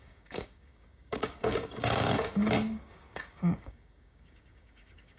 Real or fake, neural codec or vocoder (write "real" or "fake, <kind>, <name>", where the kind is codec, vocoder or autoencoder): fake, codec, DAC